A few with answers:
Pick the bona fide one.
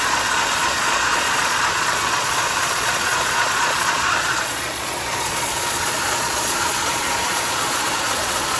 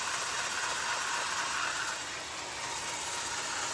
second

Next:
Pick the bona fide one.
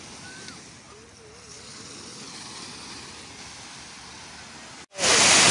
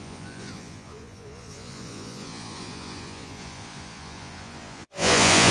first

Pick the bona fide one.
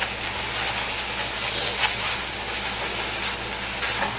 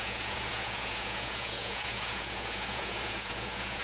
first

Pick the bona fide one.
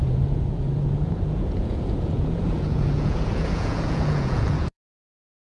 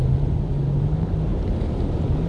second